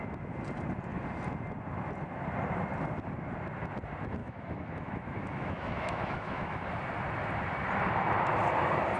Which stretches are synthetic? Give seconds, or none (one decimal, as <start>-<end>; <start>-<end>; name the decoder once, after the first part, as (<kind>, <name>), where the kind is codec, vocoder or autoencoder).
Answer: 4.2-6.7 (autoencoder, DAC-VAE)